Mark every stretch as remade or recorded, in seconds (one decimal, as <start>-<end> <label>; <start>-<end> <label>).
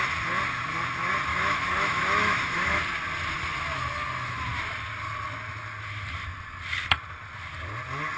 0.0-1.3 recorded; 1.3-2.8 remade; 2.8-8.2 recorded